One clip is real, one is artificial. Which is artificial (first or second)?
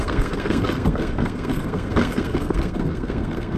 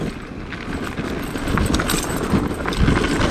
first